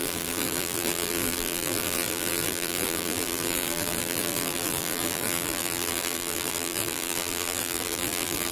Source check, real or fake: fake